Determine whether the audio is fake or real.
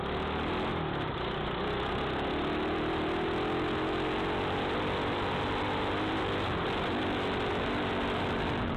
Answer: real